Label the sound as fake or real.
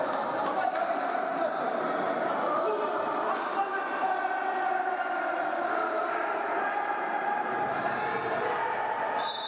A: fake